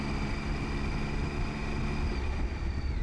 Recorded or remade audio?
recorded